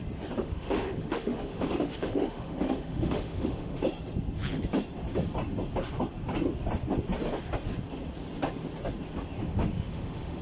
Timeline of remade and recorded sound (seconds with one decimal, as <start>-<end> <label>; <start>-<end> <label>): 0.0-0.4 recorded; 0.4-3.8 remade; 3.8-9.4 recorded; 9.4-10.4 remade

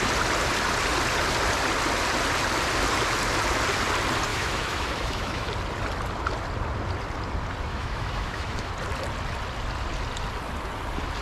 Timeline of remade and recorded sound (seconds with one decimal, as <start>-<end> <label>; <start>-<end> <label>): 0.0-4.3 recorded; 4.3-5.5 remade; 5.5-7.7 recorded; 7.7-8.7 remade; 8.7-11.2 recorded

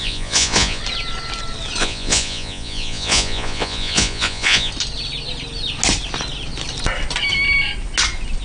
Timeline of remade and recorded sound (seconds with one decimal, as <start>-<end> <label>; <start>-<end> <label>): 0.0-0.8 remade; 0.8-1.8 recorded; 1.8-4.7 remade; 4.7-8.4 recorded

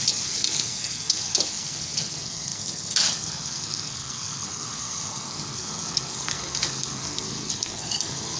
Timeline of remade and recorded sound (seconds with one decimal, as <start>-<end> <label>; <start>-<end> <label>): 0.0-8.4 remade